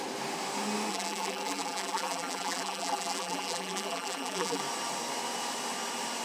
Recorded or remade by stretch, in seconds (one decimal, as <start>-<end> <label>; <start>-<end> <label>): 0.0-0.9 recorded; 0.9-4.6 remade; 4.6-6.2 recorded

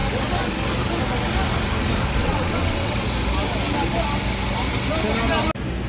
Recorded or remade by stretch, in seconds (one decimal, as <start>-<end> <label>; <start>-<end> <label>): 0.0-2.2 recorded; 2.2-2.9 remade; 2.9-5.9 recorded

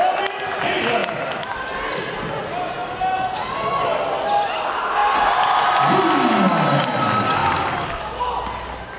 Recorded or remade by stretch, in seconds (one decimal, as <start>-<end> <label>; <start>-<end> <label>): 0.0-9.0 recorded

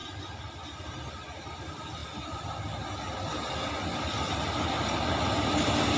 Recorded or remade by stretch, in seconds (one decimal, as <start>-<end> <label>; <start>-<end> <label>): 0.0-6.0 recorded

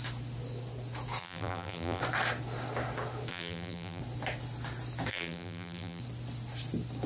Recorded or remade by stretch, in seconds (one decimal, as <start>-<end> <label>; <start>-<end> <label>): 0.0-1.2 recorded; 1.2-2.0 remade; 2.0-3.3 recorded; 3.3-4.0 remade; 4.0-5.1 recorded; 5.1-6.0 remade; 6.0-7.1 recorded